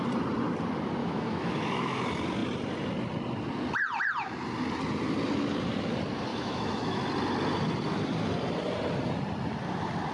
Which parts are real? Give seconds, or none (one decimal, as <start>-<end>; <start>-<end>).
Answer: 0.0-1.0; 2.0-6.3; 7.0-10.1